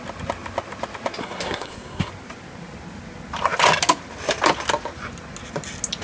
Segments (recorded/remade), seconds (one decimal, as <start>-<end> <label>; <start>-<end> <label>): 0.0-1.2 recorded; 1.2-2.1 remade; 2.1-6.0 recorded